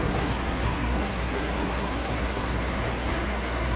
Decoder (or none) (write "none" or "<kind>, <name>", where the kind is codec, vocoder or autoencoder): codec, SNAC